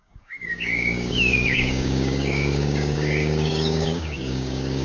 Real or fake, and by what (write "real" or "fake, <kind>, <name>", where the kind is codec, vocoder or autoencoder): fake, codec, DAC